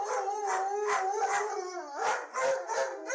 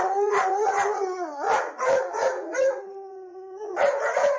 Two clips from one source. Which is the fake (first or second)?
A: second